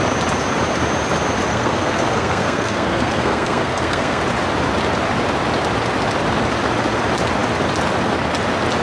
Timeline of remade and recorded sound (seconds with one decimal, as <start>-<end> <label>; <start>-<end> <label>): 0.0-1.5 recorded; 1.5-4.2 remade; 4.2-8.8 recorded